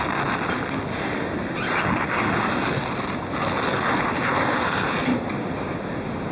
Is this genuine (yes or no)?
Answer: yes